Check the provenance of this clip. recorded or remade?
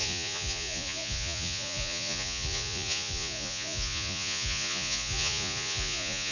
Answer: remade